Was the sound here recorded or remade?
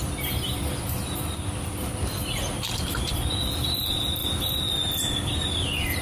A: recorded